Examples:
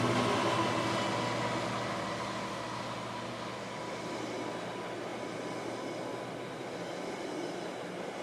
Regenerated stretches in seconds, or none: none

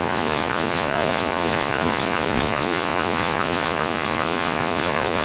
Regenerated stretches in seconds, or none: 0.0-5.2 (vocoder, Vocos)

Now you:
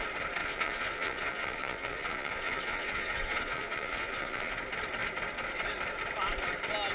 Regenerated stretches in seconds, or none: 0.4-4.5 (vocoder, Vocos)